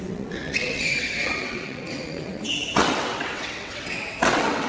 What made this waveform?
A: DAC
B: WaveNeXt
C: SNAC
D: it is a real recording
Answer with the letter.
B